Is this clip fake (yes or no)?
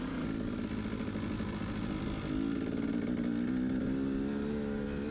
no